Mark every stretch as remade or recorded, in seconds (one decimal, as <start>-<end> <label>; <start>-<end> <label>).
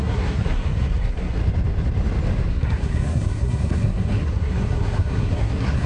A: 0.0-1.4 remade; 1.4-2.5 recorded; 2.5-5.9 remade